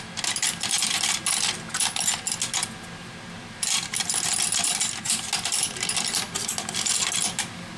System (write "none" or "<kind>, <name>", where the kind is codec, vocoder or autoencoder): none